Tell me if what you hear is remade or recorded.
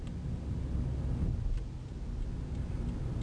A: recorded